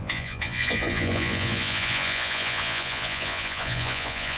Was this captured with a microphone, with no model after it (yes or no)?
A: no